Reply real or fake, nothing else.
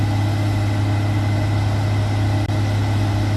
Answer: real